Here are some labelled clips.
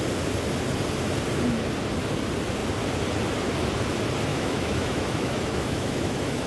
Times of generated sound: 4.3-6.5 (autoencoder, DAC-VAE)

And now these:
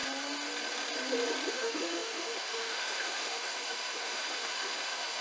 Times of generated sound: 1.5-5.2 (autoencoder, DAC-VAE)

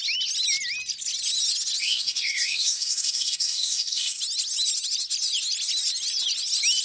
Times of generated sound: 1.8-4.2 (codec, SNAC)

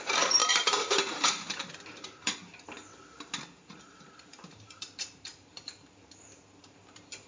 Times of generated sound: 0.0-2.8 (vocoder, BigVGAN v2); 3.7-7.3

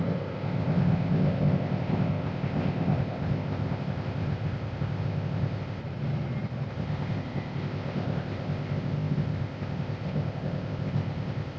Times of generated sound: 0.0-5.8 (codec, ZipCodec); 6.7-11.6

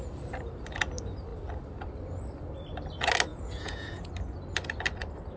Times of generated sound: 3.3-4.1 (vocoder, Vocos)

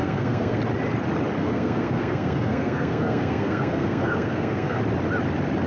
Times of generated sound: 0.0-0.6 (codec, SNAC); 1.4-4.8

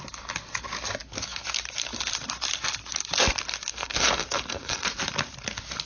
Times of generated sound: 3.7-5.0 (codec, SNAC)